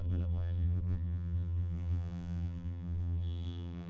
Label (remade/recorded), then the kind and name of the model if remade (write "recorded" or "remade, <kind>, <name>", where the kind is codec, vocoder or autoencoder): remade, vocoder, BigVGAN v2